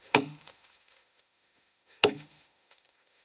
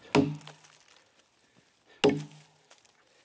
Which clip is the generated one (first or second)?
first